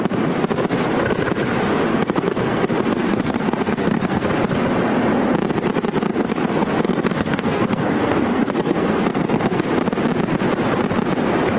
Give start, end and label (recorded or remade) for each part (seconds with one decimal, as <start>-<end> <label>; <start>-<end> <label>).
0.0-1.9 recorded; 1.9-2.7 remade; 2.7-3.1 recorded; 3.1-4.3 remade; 4.3-6.1 recorded; 6.1-9.7 remade; 9.7-11.6 recorded